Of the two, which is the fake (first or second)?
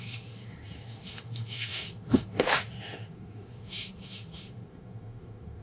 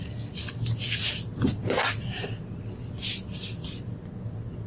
first